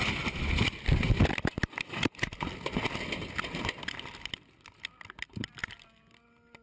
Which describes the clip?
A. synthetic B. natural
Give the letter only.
B